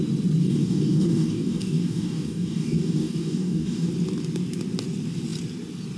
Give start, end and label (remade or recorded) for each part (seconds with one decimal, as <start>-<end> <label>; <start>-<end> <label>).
0.0-0.4 recorded; 0.4-3.9 remade; 3.9-6.0 recorded